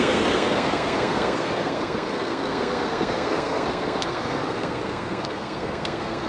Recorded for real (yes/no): no